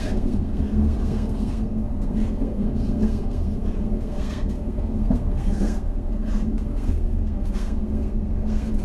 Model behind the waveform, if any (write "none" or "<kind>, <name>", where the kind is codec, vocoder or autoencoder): codec, SNAC